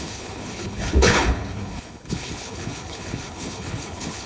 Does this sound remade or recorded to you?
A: remade